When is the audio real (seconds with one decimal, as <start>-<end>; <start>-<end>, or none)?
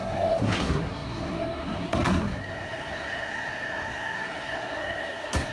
none